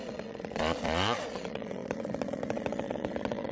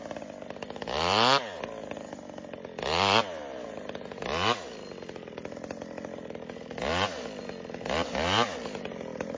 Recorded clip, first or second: second